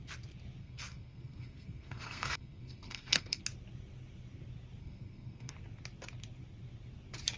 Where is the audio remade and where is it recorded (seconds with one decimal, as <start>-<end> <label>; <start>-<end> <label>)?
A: 0.0-0.6 recorded; 0.6-3.4 remade; 3.4-4.8 recorded; 4.8-5.5 remade; 5.5-7.4 recorded